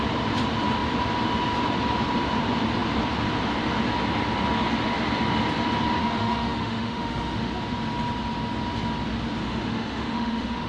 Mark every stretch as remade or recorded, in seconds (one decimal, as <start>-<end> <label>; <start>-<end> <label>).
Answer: 0.0-6.0 recorded; 6.0-7.5 remade; 7.5-9.4 recorded; 9.4-10.7 remade